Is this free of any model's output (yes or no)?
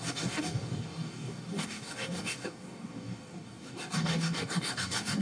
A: no